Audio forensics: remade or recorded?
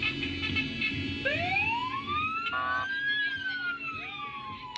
recorded